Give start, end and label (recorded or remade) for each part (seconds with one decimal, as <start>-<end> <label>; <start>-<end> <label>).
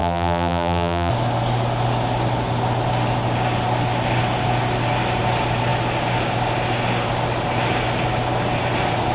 0.0-1.1 remade; 1.1-9.1 recorded